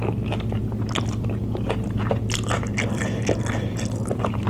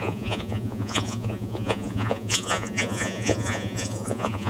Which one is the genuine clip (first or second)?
first